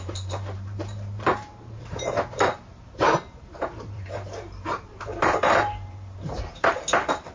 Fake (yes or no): yes